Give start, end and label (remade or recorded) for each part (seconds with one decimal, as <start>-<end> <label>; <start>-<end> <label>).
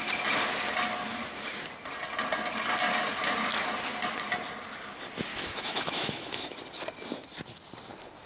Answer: 0.0-5.3 recorded; 5.3-6.6 remade; 6.6-8.3 recorded